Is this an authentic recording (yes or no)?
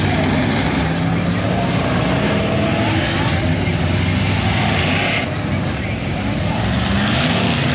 yes